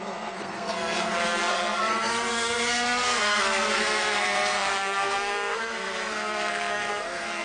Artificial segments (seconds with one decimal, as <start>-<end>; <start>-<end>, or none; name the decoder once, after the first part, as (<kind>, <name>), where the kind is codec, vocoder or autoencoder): 0.0-7.4 (codec, SNAC)